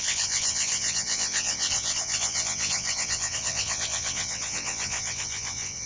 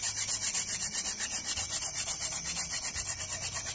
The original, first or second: second